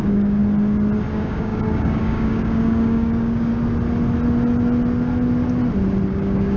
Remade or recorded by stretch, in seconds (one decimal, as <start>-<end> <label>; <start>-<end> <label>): 0.0-0.4 remade; 0.4-1.1 recorded; 1.1-3.5 remade; 3.5-6.1 recorded; 6.1-6.6 remade